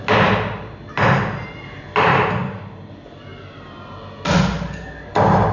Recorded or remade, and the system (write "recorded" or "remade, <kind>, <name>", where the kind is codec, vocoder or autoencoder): recorded